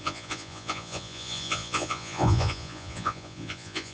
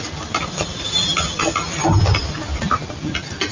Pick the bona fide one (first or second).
second